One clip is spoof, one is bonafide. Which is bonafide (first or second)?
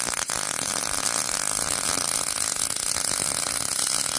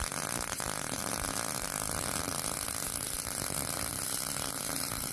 first